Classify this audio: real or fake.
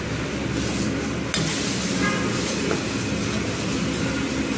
real